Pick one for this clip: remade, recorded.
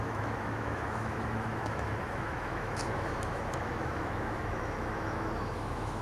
remade